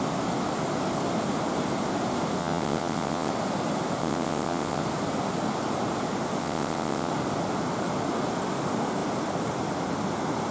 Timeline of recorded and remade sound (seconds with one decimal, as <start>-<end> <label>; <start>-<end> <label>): 0.0-2.4 recorded; 2.4-3.3 remade; 3.3-4.0 recorded; 4.0-4.8 remade; 4.8-6.4 recorded; 6.4-7.1 remade; 7.1-10.5 recorded